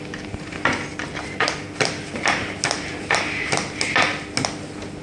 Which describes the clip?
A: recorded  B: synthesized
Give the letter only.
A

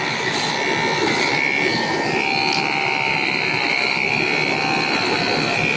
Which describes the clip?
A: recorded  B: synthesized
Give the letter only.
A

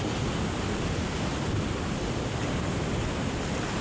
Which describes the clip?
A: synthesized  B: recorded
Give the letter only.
B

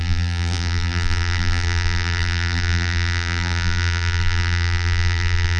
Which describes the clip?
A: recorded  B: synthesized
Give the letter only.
B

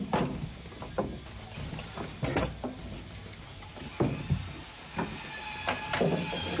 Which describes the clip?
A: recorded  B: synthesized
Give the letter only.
A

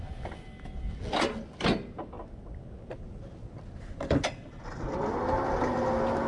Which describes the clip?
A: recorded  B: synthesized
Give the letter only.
A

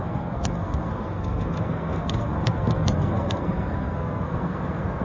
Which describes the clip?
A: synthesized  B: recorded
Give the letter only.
A